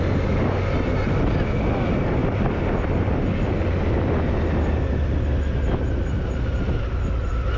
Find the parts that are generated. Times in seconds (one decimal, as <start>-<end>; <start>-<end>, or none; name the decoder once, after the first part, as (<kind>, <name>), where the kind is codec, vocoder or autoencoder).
none